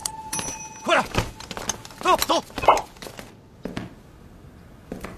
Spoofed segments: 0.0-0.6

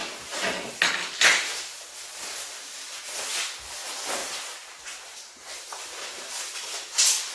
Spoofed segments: 4.2-6.3